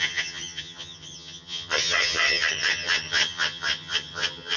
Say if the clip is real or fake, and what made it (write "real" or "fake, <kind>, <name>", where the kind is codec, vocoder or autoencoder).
fake, vocoder, HiFi-GAN